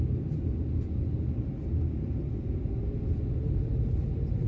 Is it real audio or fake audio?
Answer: real